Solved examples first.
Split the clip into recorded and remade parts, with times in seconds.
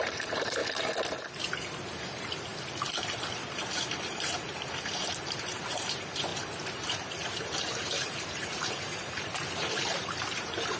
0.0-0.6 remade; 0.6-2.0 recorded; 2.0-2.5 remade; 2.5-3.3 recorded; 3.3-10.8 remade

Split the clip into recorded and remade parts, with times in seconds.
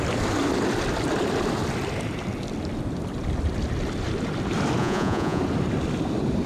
0.0-4.8 recorded; 4.8-5.4 remade; 5.4-6.5 recorded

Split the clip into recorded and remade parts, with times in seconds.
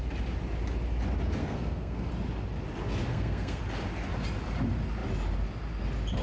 0.0-1.4 recorded; 1.4-2.1 remade; 2.1-3.1 recorded; 3.1-3.6 remade; 3.6-6.2 recorded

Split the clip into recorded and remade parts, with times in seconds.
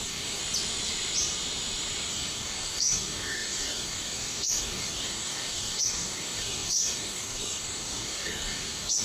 0.0-0.4 remade; 0.4-2.1 recorded; 2.1-9.0 remade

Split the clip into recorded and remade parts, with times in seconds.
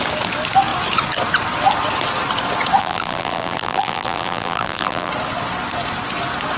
0.0-2.8 recorded; 2.8-5.1 remade; 5.1-6.6 recorded